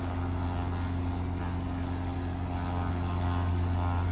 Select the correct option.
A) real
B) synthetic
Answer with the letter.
A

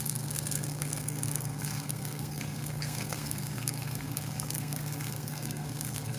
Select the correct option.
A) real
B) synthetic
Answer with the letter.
B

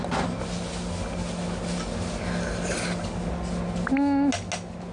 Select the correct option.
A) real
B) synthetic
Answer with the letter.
A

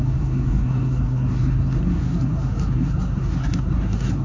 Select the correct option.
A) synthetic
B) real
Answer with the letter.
A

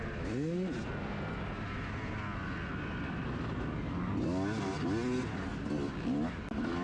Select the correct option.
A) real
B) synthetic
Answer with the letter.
A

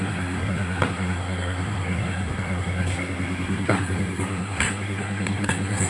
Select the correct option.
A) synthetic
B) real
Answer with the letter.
A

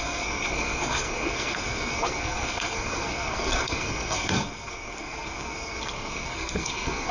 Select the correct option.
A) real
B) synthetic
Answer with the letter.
B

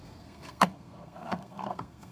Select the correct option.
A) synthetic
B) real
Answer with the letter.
A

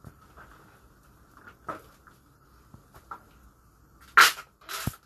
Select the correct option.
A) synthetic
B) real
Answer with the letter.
B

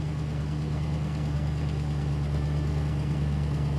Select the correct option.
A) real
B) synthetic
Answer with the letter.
B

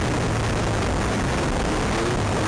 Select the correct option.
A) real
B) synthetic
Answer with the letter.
A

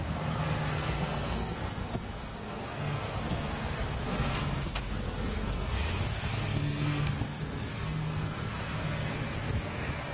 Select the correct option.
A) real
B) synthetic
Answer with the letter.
B